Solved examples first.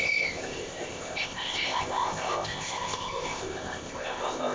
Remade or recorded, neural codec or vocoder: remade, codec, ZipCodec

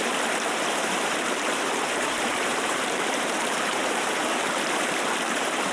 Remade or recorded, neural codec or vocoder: remade, vocoder, BigVGAN v2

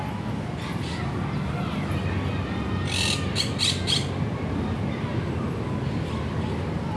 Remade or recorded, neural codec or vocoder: recorded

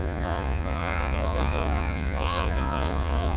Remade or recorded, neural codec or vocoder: remade, vocoder, Vocos